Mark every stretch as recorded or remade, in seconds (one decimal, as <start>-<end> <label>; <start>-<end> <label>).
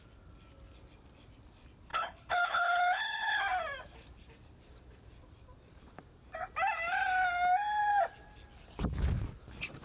0.0-1.9 recorded; 1.9-3.4 remade; 3.4-9.8 recorded